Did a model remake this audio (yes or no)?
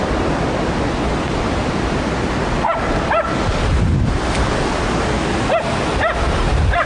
no